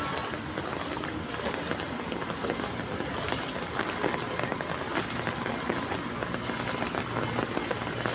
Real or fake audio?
real